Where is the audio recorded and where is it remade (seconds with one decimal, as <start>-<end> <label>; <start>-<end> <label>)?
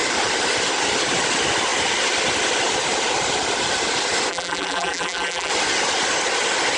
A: 0.0-4.3 recorded; 4.3-5.5 remade; 5.5-6.8 recorded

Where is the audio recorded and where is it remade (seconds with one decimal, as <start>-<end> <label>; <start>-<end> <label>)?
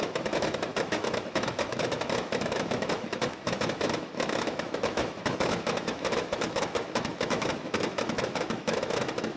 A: 0.0-9.4 remade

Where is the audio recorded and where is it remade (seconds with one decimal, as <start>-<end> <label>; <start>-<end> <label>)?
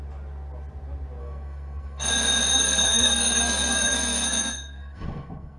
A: 0.0-1.2 recorded; 1.2-2.1 remade; 2.1-2.5 recorded; 2.5-5.6 remade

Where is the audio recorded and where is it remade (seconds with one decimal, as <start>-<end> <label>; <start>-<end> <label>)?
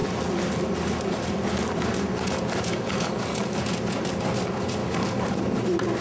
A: 0.0-2.7 recorded; 2.7-3.6 remade; 3.6-4.8 recorded; 4.8-5.3 remade; 5.3-6.0 recorded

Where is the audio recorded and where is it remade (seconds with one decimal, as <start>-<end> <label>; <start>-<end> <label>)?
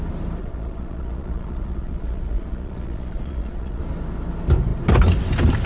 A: 0.0-0.4 recorded; 0.4-3.8 remade; 3.8-5.7 recorded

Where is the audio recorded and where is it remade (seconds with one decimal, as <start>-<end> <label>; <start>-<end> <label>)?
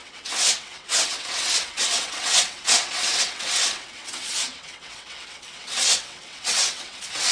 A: 0.0-7.3 remade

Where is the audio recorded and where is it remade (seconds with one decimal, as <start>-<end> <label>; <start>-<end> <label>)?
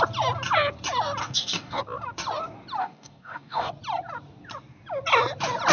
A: 0.0-1.2 recorded; 1.2-1.8 remade; 1.8-2.8 recorded; 2.8-3.7 remade; 3.7-5.7 recorded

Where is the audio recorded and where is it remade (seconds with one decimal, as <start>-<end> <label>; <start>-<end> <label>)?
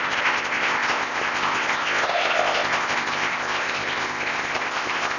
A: 0.0-5.2 remade